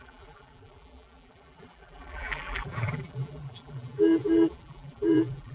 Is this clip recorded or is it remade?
remade